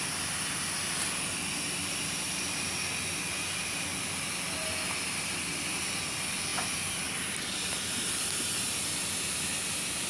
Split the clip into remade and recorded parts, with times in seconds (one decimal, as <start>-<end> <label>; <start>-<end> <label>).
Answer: 0.0-10.1 recorded